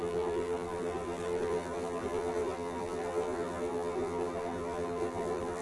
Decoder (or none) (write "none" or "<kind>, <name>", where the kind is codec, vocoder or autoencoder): vocoder, BigVGAN v2